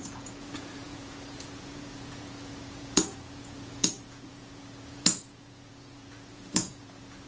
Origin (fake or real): fake